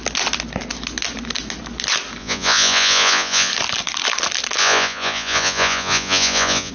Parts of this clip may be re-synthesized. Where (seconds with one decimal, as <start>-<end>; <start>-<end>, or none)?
2.2-3.5; 4.6-6.7